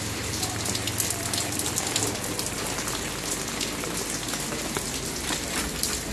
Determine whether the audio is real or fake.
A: real